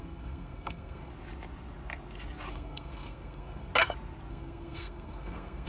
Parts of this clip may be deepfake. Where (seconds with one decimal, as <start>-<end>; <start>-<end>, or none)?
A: 0.0-1.1; 2.5-3.7; 4.3-5.7